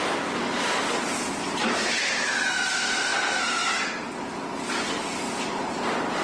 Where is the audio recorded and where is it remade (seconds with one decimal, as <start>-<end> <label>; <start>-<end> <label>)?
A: 0.0-6.2 recorded